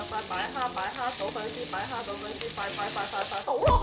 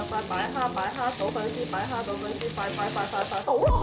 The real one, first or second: second